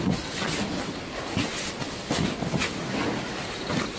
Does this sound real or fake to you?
real